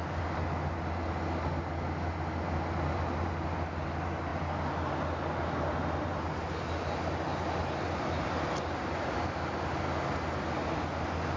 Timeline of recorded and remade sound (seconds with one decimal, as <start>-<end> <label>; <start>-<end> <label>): 0.0-11.4 recorded